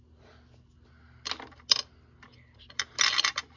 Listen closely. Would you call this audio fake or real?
real